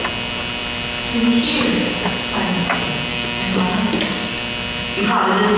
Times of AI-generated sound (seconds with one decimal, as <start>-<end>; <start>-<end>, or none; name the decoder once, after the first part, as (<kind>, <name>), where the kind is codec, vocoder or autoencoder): 3.1-4.3 (codec, DAC)